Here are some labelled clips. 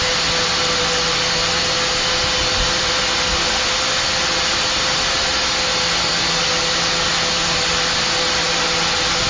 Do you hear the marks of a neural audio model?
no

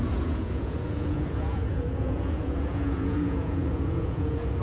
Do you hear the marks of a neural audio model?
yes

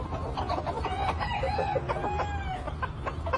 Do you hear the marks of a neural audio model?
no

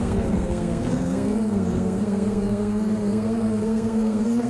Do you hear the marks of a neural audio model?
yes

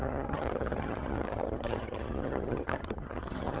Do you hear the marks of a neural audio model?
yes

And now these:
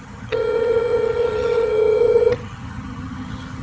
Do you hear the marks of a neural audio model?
yes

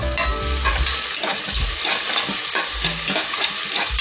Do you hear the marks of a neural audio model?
no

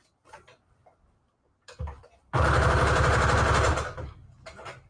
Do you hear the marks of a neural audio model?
no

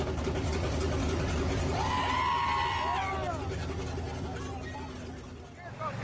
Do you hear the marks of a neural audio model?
no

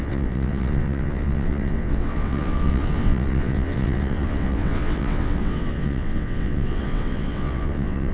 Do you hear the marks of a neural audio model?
yes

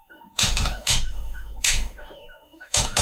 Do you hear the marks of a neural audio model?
yes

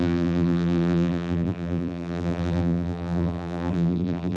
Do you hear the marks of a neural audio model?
yes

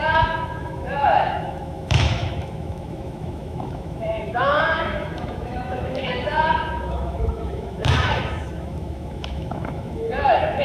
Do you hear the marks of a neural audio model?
yes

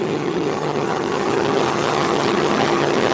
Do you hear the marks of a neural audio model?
yes